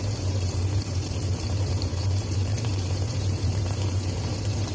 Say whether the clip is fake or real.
fake